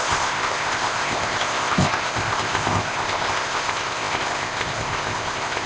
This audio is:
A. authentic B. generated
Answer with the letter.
B